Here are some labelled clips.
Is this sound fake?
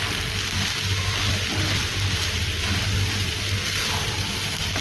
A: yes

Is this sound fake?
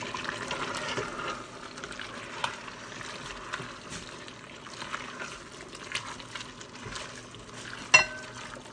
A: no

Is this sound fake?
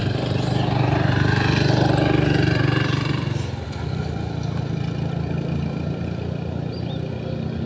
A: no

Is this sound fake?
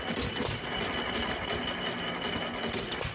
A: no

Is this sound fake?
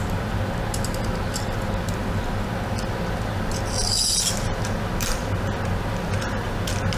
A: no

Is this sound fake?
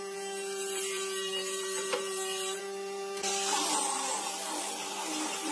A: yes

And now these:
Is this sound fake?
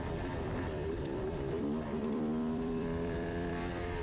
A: yes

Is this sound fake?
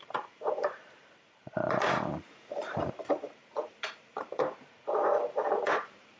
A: yes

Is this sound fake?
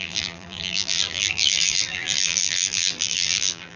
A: yes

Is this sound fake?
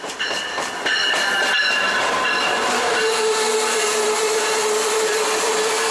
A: yes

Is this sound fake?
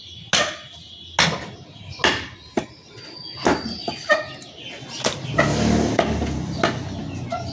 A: no